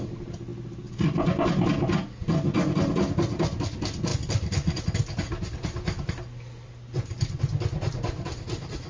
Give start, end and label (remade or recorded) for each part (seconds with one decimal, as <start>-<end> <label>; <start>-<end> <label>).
0.0-7.5 recorded; 7.5-8.9 remade